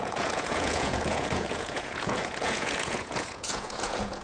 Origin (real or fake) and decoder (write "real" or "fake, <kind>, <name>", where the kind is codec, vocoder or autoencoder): fake, vocoder, Vocos